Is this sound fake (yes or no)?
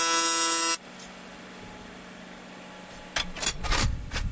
no